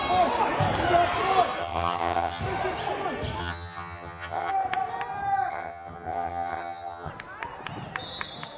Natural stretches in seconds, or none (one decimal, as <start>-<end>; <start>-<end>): 0.0-1.6; 2.4-3.4; 4.5-5.5; 7.1-8.6